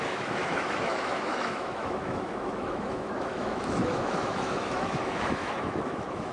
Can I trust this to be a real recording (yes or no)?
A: no